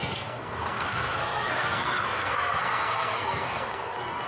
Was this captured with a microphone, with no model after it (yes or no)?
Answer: no